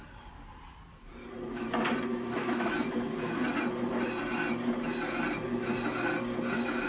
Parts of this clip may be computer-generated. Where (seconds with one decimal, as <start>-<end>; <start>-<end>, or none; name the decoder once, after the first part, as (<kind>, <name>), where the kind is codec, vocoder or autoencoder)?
2.1-2.7 (autoencoder, DAC-VAE)